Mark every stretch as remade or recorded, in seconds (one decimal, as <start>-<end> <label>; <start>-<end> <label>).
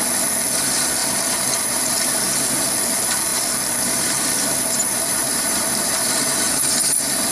0.0-1.0 recorded; 1.0-2.2 remade; 2.2-3.3 recorded; 3.3-6.8 remade; 6.8-7.3 recorded